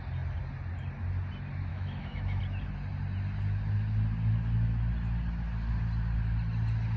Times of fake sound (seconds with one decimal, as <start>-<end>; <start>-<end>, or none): 1.7-2.4